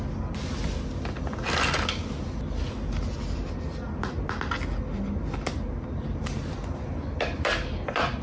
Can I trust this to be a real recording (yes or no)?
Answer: yes